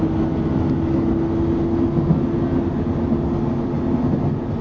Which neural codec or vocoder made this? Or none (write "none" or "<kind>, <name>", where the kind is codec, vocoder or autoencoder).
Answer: none